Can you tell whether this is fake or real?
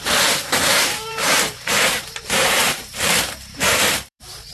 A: fake